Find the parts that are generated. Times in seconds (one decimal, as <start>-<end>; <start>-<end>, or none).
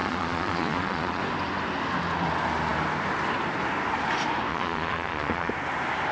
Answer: 0.0-1.2; 4.5-5.5